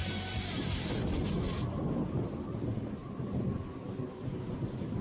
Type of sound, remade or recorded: recorded